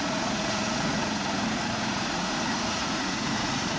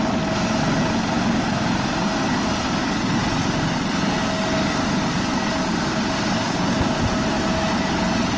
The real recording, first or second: second